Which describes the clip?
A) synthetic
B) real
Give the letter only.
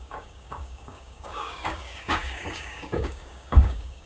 A